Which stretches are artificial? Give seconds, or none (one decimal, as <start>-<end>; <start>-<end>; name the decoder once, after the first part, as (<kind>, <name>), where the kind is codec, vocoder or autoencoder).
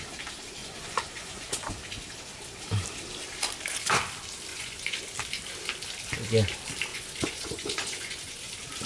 0.6-1.7 (vocoder, Vocos); 4.5-5.0; 6.9-8.5